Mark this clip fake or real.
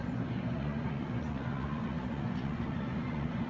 fake